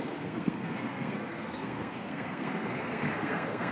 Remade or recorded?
remade